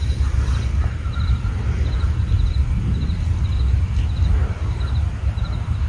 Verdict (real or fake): real